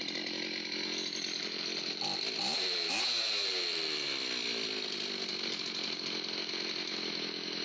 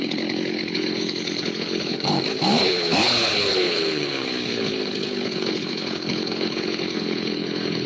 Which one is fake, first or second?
second